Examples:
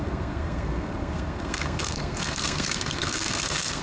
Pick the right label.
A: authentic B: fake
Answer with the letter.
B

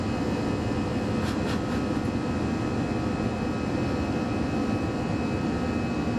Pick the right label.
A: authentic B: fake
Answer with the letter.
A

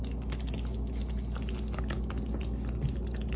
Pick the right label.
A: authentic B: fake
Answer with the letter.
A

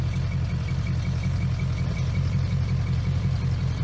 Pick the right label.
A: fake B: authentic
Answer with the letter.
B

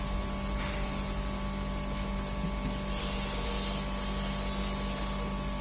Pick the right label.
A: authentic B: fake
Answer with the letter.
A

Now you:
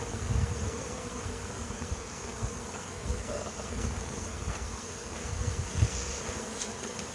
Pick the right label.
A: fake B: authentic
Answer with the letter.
A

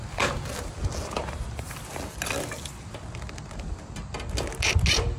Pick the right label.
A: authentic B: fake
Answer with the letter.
A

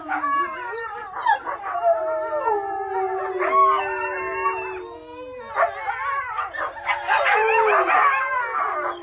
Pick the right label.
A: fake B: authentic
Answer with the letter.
B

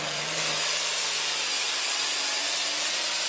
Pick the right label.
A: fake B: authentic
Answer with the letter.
B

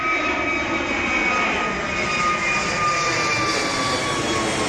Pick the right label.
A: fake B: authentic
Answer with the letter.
B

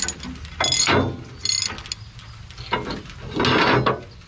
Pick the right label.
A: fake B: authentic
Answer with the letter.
B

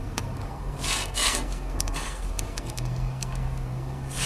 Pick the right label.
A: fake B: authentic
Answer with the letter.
A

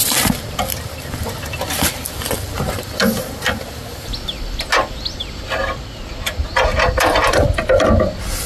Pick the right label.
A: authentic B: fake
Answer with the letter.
A